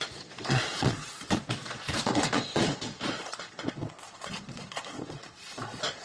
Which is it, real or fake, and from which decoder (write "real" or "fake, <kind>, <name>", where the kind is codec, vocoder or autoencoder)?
fake, vocoder, Vocos